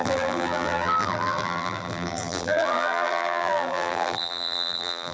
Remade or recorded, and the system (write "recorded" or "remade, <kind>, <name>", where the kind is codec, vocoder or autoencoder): remade, vocoder, BigVGAN v2